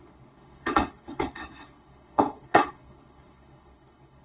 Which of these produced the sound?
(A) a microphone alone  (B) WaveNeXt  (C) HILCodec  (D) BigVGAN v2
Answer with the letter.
C